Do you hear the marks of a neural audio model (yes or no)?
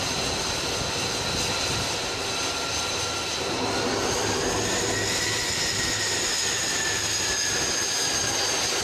no